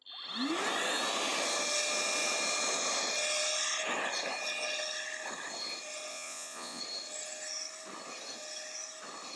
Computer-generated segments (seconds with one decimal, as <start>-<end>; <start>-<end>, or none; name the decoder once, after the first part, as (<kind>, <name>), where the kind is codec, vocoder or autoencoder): 6.1-6.8 (vocoder, Vocos)